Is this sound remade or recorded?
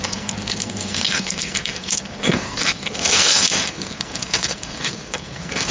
remade